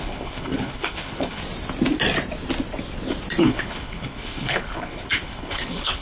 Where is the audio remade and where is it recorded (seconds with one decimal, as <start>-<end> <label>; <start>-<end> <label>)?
0.0-1.4 remade; 1.4-3.4 recorded; 3.4-6.0 remade